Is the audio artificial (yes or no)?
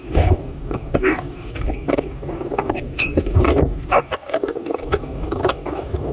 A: yes